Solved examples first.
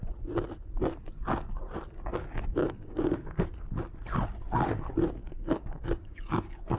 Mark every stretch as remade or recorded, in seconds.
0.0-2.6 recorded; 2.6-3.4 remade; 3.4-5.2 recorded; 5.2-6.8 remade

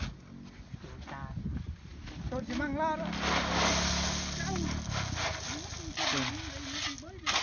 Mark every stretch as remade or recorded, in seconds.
0.0-7.4 recorded

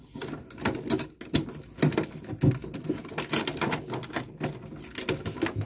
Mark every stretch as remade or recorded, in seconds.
0.0-5.6 recorded

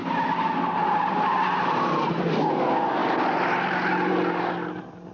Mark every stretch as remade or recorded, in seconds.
0.0-5.1 recorded